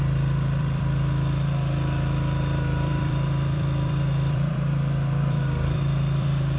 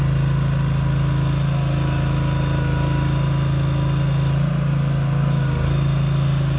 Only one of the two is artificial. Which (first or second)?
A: first